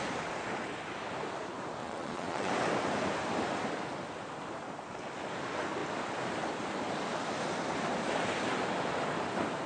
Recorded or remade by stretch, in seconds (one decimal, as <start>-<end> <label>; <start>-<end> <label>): 0.0-1.8 recorded; 1.8-2.5 remade; 2.5-9.7 recorded